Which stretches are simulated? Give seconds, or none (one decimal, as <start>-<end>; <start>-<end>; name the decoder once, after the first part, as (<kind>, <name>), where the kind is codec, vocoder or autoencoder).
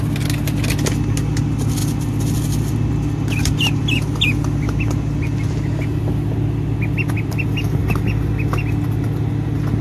none